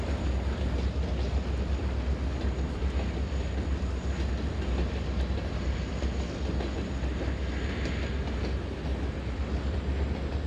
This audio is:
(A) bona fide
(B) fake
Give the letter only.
A